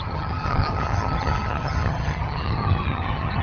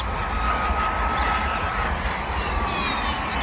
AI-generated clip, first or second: first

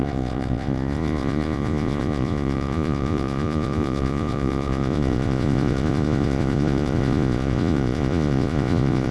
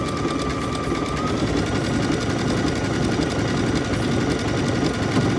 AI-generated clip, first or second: first